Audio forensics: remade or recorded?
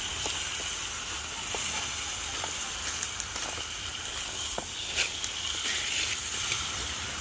recorded